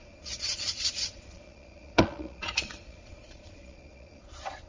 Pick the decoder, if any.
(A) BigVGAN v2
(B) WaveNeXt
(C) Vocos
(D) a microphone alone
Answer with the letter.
C